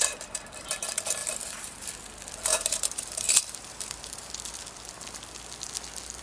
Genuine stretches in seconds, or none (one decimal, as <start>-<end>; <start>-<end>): 0.7-1.2; 1.9-2.5; 4.3-6.2